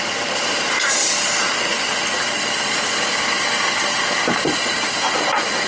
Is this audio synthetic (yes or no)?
no